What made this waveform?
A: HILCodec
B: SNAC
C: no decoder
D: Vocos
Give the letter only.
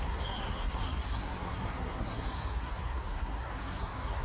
B